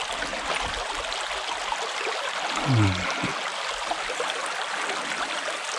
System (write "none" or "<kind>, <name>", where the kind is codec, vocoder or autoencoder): none